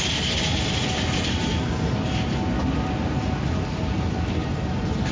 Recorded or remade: recorded